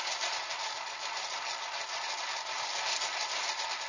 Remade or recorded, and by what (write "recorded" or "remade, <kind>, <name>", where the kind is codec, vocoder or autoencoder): recorded